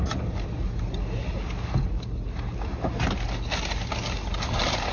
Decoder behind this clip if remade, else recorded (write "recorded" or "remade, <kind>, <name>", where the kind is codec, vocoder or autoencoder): recorded